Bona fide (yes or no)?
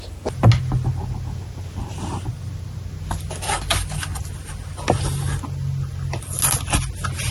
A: yes